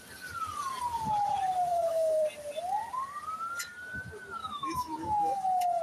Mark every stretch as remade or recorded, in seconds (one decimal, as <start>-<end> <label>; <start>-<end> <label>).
0.0-1.7 recorded; 1.7-2.2 remade; 2.2-4.4 recorded; 4.4-5.8 remade